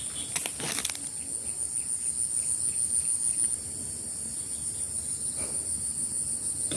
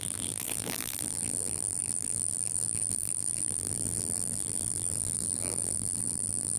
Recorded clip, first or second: first